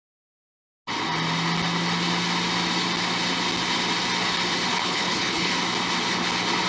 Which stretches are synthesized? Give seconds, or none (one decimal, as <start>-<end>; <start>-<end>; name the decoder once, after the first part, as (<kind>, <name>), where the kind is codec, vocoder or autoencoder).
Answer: 4.7-5.5 (codec, HILCodec)